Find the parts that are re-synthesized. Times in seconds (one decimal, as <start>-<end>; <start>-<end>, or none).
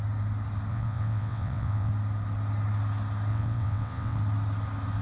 0.7-1.9; 3.3-4.2